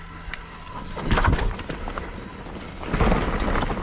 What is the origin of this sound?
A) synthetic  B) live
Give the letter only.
B